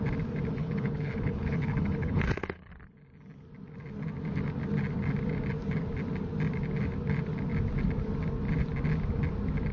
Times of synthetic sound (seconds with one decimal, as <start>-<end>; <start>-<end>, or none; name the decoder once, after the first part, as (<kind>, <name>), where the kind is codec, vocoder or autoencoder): 0.6-2.7 (codec, HILCodec)